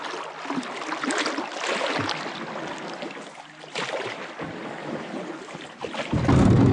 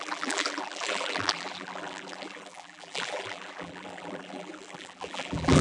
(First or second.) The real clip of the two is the first